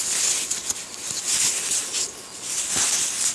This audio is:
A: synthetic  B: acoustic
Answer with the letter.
B